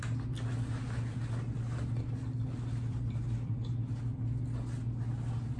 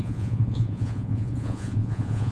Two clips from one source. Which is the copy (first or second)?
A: second